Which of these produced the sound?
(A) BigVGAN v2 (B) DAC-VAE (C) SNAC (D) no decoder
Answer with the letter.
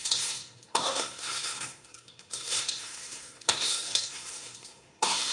C